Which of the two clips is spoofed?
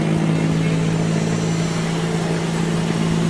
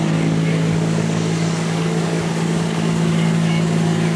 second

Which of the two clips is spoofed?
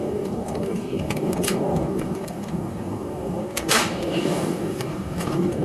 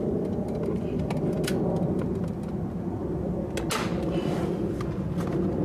first